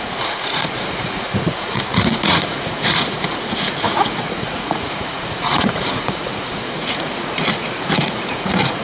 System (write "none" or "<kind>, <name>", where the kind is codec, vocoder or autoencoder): vocoder, Vocos